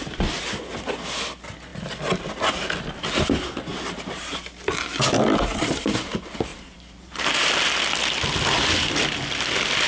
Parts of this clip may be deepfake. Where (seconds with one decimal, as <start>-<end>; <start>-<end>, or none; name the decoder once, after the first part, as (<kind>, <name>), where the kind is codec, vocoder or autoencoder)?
3.7-4.4 (vocoder, BigVGAN v2); 6.5-7.5